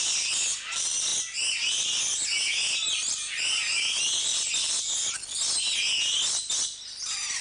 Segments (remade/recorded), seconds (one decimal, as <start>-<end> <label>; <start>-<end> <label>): 0.0-7.4 recorded